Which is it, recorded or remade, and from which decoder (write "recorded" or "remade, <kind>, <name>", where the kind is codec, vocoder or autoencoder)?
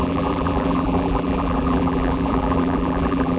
remade, vocoder, BigVGAN v2